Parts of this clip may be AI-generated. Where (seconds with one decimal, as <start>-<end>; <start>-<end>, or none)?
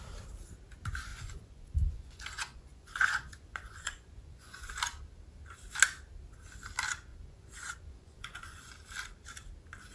1.1-4.8; 7.1-8.7